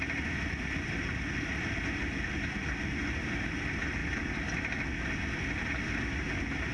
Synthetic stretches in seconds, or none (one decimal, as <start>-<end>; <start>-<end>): none